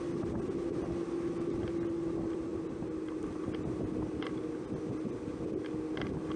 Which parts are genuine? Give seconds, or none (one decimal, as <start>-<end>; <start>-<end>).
0.0-6.4